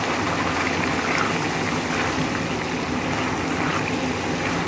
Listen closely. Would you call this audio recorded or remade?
recorded